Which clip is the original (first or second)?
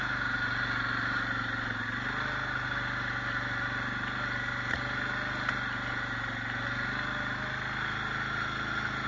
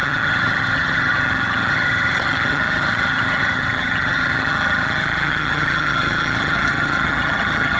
first